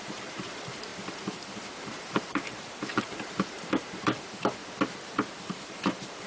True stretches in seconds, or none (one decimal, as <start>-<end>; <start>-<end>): 4.6-5.4